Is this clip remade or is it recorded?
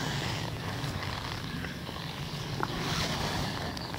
remade